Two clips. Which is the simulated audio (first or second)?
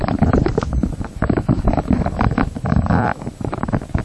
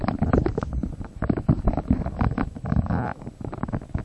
first